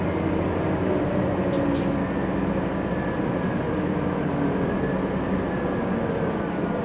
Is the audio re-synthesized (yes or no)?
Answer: no